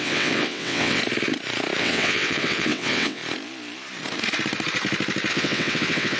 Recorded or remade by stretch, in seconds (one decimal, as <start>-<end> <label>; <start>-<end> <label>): 0.0-1.0 remade; 1.0-1.8 recorded; 1.8-3.2 remade; 3.2-5.3 recorded; 5.3-6.2 remade